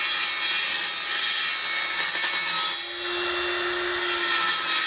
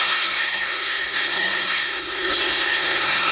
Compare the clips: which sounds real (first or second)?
first